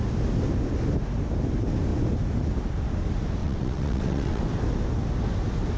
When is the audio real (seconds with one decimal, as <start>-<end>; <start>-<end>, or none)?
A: 0.0-3.4; 4.4-5.8